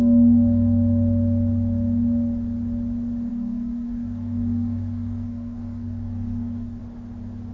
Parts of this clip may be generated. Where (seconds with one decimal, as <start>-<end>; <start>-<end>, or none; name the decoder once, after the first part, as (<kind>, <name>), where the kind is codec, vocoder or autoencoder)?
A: 3.3-6.8 (codec, SNAC)